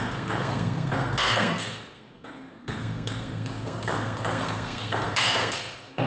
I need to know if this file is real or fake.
fake